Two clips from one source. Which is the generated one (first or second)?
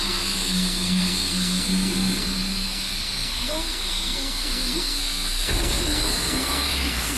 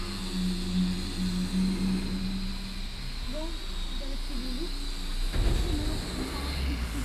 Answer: first